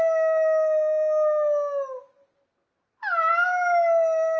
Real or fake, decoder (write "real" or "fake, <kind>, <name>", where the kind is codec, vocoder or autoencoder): real